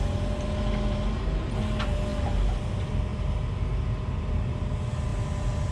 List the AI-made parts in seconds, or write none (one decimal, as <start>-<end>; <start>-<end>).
none